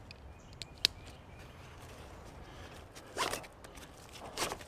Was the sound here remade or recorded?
recorded